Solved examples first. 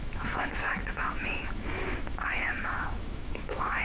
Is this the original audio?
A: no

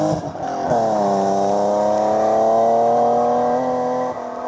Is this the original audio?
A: yes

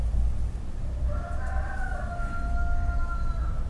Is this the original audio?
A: yes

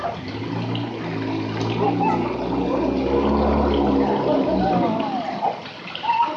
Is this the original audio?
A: yes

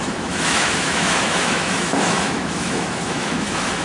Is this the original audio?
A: no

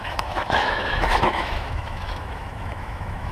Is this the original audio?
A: no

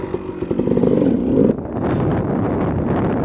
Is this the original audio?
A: yes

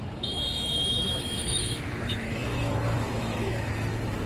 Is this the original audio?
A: no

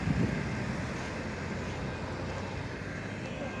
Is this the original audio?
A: yes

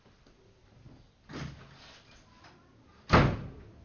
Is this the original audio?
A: yes